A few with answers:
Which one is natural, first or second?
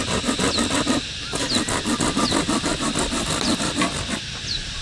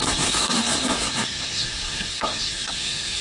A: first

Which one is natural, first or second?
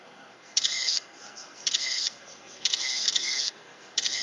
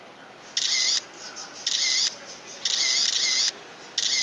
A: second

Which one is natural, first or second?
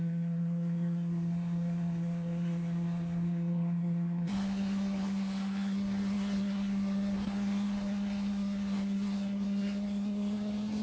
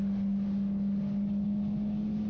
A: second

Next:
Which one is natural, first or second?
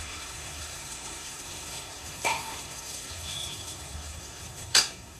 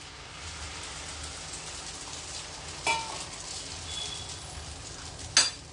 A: second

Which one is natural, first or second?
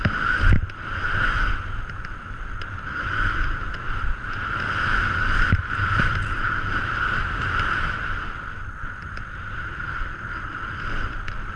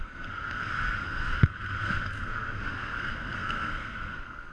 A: first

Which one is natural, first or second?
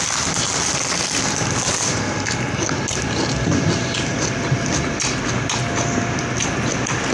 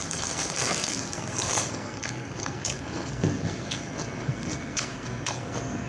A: first